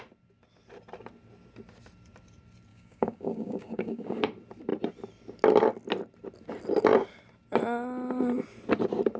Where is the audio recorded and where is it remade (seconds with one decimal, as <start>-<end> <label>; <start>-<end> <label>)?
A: 0.0-2.7 recorded; 2.7-4.2 remade; 4.2-9.2 recorded